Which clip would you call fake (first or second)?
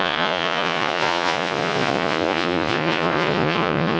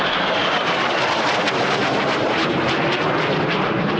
first